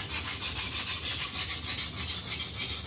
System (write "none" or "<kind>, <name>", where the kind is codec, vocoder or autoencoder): none